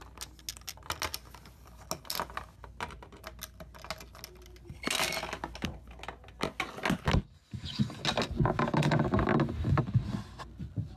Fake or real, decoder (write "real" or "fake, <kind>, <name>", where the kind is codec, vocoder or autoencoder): real